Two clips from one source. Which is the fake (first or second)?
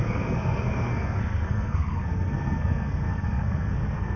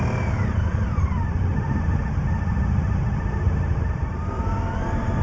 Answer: first